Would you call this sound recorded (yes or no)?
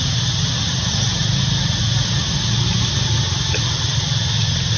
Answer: yes